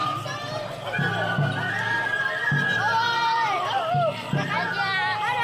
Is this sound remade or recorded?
recorded